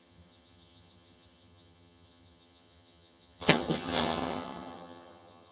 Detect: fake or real fake